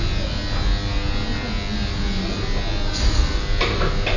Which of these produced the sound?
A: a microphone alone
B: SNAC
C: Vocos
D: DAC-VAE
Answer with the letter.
A